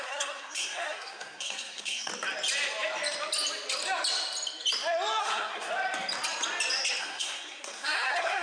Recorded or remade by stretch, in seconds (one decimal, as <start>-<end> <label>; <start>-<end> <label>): 0.0-2.1 remade; 2.1-5.2 recorded; 5.2-5.7 remade; 5.7-7.0 recorded; 7.0-8.4 remade